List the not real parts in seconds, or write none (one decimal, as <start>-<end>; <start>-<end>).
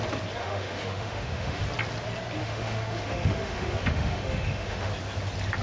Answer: 0.4-1.6; 2.4-4.9